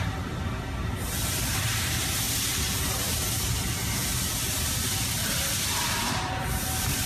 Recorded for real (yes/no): no